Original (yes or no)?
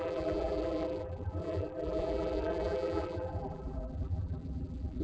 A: no